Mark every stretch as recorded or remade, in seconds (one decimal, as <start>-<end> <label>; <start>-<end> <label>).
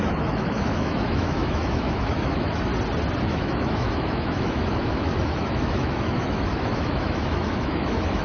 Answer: 0.0-2.7 remade; 2.7-3.2 recorded; 3.2-8.2 remade